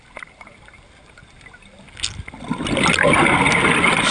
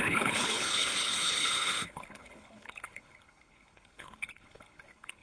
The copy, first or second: second